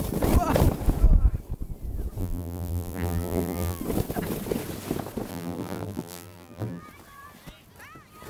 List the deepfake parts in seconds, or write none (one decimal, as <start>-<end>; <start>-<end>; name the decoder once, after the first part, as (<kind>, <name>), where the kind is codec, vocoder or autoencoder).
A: 2.2-3.8 (vocoder, BigVGAN v2); 5.3-6.8